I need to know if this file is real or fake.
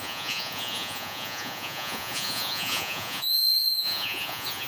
fake